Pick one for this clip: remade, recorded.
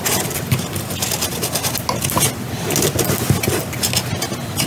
recorded